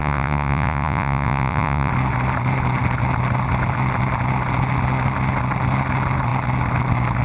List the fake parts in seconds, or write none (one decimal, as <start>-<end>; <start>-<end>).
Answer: 0.0-1.9